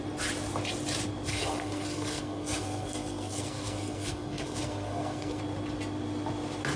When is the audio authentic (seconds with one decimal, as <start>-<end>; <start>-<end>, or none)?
0.0-1.3; 5.4-6.8